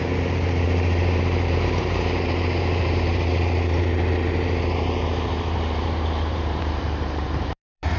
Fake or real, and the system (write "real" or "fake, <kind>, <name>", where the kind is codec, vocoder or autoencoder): fake, vocoder, BigVGAN v2